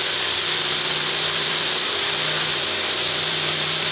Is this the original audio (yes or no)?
no